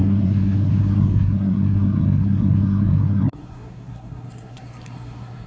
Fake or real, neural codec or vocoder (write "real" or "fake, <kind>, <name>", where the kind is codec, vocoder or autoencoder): fake, codec, SNAC